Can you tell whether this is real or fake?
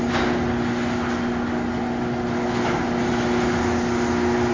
real